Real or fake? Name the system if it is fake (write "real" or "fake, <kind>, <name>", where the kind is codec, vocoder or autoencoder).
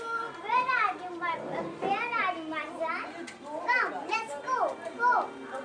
real